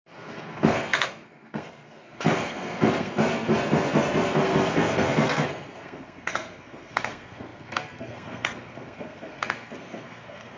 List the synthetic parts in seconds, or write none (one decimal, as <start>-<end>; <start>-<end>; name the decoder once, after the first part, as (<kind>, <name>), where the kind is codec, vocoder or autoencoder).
0.0-10.6 (codec, SNAC)